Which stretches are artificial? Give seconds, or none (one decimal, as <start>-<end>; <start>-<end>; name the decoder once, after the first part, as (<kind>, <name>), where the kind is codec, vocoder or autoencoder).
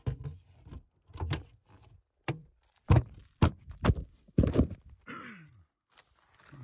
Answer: 0.7-1.7 (vocoder, BigVGAN v2); 2.4-5.0